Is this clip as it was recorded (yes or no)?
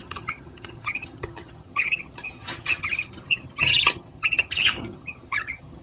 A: no